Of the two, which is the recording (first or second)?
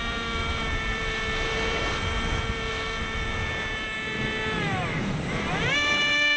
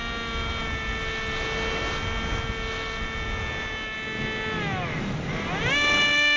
second